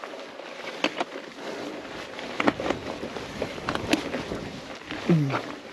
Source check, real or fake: real